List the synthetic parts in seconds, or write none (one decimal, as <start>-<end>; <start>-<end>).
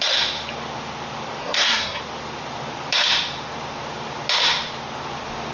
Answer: 1.4-2.0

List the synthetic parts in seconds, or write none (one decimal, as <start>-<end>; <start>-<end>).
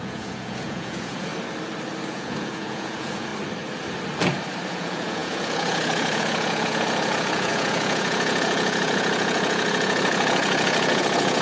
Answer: 0.0-1.3; 2.1-3.3; 4.7-11.4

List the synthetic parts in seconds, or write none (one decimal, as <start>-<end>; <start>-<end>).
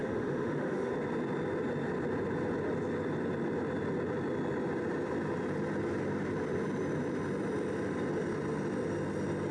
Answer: 0.0-0.9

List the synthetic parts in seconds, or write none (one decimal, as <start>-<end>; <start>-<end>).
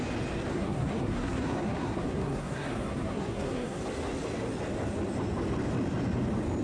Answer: 0.5-3.8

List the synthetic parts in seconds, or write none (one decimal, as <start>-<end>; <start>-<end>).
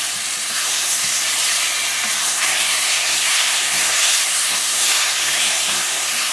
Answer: 0.4-1.2; 2.2-6.3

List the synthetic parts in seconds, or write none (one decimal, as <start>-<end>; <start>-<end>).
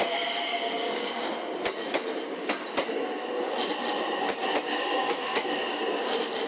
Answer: 0.5-1.3; 4.7-5.8